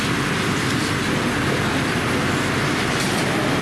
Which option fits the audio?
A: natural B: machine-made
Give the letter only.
A